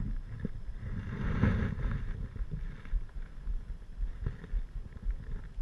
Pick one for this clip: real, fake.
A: real